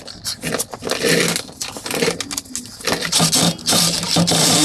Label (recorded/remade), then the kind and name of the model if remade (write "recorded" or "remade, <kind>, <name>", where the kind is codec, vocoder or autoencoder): recorded